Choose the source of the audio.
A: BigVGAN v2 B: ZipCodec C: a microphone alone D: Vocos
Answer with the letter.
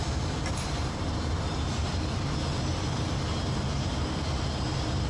C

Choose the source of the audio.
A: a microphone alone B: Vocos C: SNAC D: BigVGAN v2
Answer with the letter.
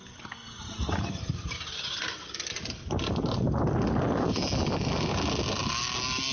A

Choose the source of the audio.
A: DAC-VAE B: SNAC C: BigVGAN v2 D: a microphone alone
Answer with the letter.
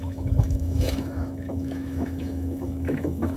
A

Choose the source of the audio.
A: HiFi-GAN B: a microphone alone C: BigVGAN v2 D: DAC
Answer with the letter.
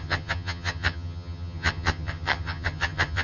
A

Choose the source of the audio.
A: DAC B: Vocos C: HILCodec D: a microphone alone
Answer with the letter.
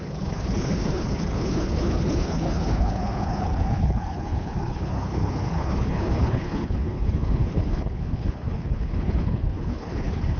C